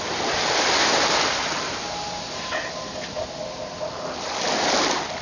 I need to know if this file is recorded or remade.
recorded